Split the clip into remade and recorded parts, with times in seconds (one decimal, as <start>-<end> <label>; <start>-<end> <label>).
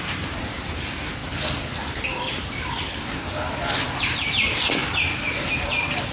0.0-1.2 remade; 1.2-4.0 recorded; 4.0-6.1 remade